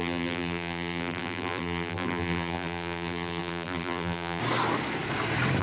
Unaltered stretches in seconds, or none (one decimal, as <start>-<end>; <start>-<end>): 4.4-5.6